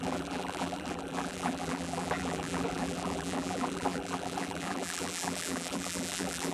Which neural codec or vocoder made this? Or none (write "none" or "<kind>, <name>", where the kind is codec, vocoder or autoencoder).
vocoder, BigVGAN v2